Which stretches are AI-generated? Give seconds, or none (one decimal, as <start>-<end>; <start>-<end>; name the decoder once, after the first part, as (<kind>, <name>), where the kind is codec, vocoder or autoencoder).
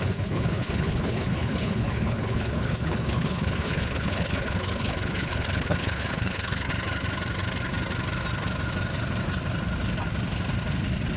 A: 0.0-6.7 (codec, HILCodec)